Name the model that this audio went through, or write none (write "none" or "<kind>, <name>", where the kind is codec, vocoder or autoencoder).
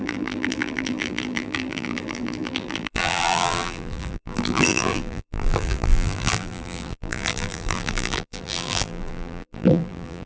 vocoder, BigVGAN v2